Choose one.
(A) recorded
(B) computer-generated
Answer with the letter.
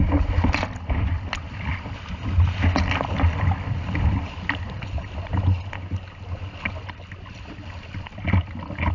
A